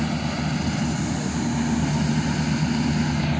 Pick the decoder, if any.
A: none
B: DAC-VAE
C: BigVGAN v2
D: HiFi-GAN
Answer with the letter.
A